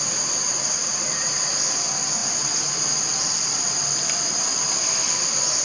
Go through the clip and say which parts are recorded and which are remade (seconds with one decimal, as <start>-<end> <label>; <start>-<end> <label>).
0.0-5.6 recorded